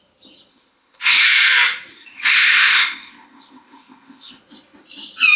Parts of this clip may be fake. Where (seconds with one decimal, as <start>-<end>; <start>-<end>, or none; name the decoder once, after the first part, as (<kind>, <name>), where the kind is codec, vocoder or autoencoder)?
0.5-1.2 (codec, ZipCodec); 1.9-4.4